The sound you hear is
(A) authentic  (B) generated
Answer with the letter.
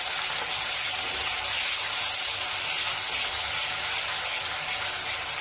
A